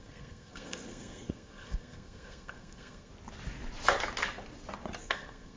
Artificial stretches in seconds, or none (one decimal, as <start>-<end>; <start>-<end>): 0.0-3.1; 5.0-5.6